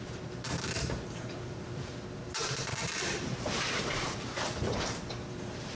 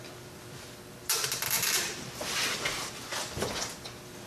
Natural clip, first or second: second